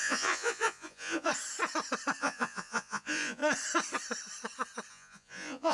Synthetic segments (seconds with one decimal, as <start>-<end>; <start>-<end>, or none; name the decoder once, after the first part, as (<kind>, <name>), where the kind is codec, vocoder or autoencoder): 0.0-1.3 (vocoder, Vocos); 2.2-3.4; 4.9-5.7